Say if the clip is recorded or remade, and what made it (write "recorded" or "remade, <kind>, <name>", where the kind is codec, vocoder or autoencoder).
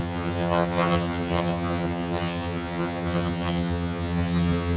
remade, vocoder, HiFi-GAN